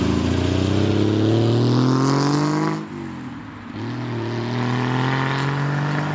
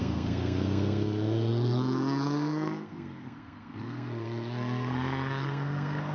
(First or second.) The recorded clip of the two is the first